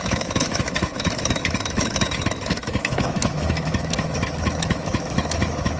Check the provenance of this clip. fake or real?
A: fake